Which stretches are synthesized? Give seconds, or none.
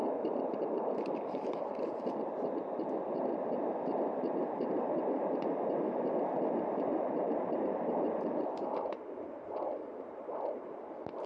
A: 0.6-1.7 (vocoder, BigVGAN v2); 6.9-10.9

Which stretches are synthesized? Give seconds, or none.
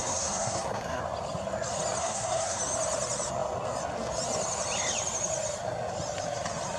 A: 0.0-1.0 (codec, SNAC); 2.0-2.6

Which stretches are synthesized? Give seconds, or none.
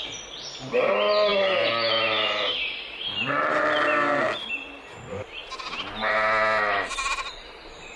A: none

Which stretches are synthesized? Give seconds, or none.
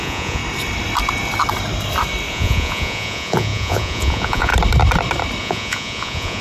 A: 0.0-0.4 (vocoder, Vocos); 2.3-4.5; 5.4-6.4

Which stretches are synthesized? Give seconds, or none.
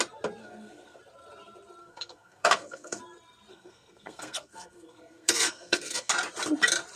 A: 0.4-1.0 (codec, SNAC); 1.8-3.0; 3.5-6.1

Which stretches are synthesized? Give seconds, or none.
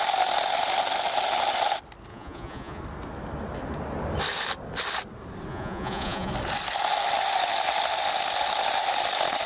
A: 2.1-2.8 (vocoder, Vocos); 5.5-6.3